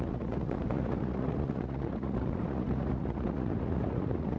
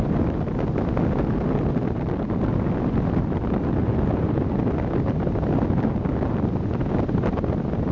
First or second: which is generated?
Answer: first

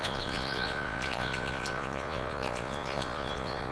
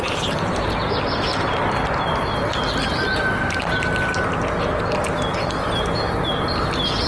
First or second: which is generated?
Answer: first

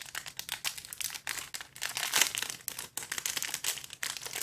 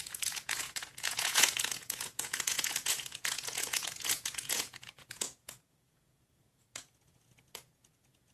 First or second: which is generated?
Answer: second